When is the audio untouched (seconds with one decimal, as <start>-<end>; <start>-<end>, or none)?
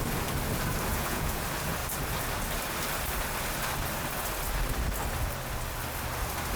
0.0-0.9; 1.4-6.6